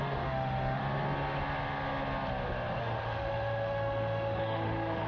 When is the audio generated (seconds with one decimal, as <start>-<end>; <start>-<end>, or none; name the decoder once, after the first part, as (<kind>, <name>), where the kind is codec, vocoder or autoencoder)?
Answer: 0.0-0.8 (autoencoder, DAC-VAE); 2.8-5.1